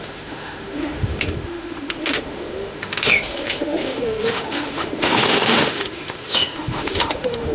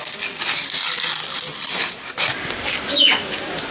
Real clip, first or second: second